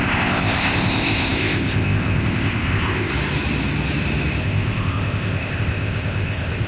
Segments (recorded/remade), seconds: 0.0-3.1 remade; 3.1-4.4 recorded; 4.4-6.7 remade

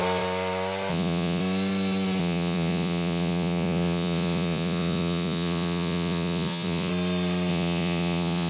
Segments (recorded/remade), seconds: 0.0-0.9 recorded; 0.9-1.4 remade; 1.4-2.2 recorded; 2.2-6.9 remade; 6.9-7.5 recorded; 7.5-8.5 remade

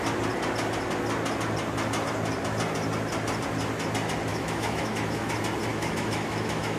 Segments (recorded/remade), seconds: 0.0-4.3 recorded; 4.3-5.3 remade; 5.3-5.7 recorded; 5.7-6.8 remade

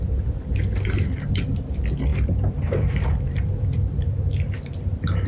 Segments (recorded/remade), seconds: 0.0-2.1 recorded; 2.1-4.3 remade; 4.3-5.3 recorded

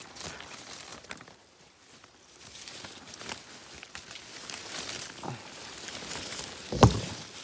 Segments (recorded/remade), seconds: 0.0-7.4 recorded

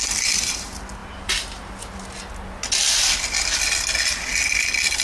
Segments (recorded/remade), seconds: 0.0-5.0 recorded

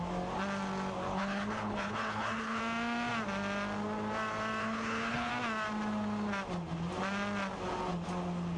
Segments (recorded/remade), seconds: 0.0-1.1 recorded; 1.1-2.6 remade; 2.6-4.6 recorded; 4.6-5.3 remade; 5.3-8.6 recorded